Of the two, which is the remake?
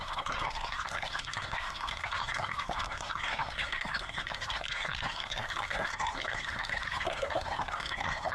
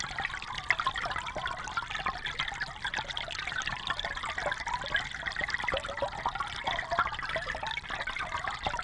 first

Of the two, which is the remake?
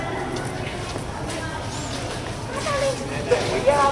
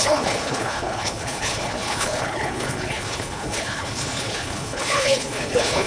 second